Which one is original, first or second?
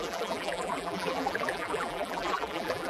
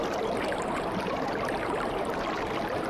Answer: second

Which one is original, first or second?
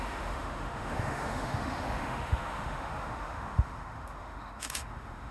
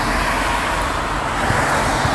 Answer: second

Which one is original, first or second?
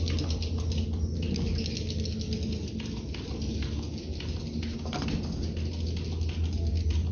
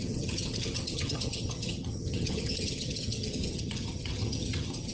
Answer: first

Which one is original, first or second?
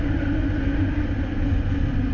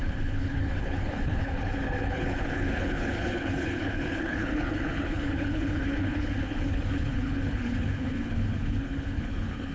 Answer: first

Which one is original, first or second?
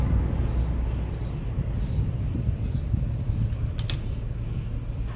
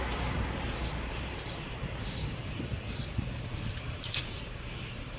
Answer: first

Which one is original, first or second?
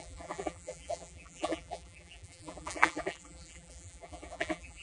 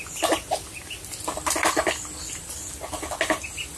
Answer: second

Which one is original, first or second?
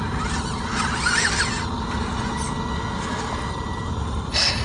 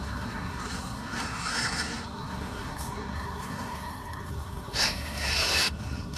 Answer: first